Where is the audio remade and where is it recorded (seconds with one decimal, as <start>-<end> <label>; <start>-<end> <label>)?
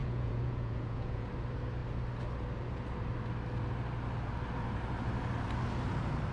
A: 0.0-1.3 remade; 1.3-6.3 recorded